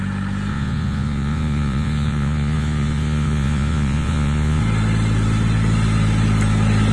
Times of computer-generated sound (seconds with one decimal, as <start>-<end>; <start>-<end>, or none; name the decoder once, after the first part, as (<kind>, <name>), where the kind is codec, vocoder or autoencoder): 0.5-4.6 (vocoder, Vocos)